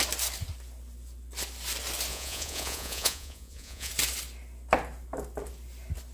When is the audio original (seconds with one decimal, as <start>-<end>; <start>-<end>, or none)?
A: 0.0-2.1; 3.9-6.1